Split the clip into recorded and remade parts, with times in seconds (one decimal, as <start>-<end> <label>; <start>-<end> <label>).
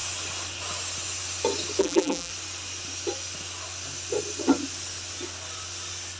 0.0-1.8 recorded; 1.8-2.3 remade; 2.3-6.2 recorded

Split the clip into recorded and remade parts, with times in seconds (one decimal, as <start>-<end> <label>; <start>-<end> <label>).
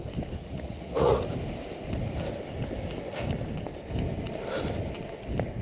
0.0-0.4 recorded; 0.4-1.2 remade; 1.2-5.6 recorded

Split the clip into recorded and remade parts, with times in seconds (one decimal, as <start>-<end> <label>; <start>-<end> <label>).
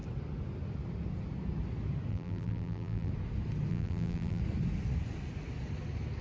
0.0-2.1 recorded; 2.1-3.1 remade; 3.1-3.7 recorded; 3.7-4.4 remade; 4.4-6.2 recorded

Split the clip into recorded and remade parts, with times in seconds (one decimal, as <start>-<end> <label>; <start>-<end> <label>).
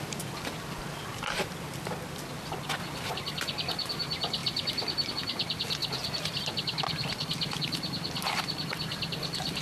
0.0-4.4 recorded; 4.4-5.1 remade; 5.1-9.6 recorded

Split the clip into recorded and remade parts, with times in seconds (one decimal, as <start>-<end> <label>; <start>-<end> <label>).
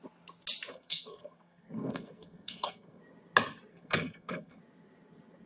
0.0-0.7 recorded; 0.7-3.0 remade; 3.0-3.7 recorded; 3.7-4.6 remade; 4.6-5.5 recorded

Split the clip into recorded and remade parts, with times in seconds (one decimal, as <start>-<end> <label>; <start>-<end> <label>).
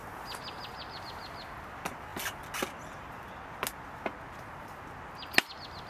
0.0-5.9 recorded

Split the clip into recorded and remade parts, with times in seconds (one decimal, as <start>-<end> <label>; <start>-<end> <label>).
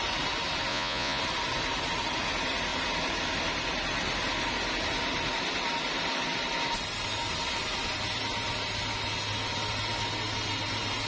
0.0-0.7 recorded; 0.7-1.2 remade; 1.2-11.1 recorded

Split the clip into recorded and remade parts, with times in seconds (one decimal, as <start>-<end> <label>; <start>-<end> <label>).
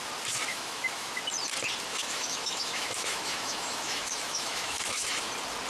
0.0-0.5 recorded; 0.5-1.1 remade; 1.1-1.9 recorded; 1.9-5.3 remade; 5.3-5.7 recorded